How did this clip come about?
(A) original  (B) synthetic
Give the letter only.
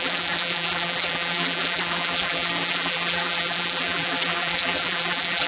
B